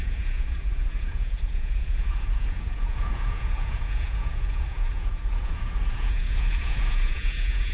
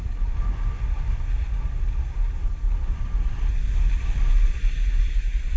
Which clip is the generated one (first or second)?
first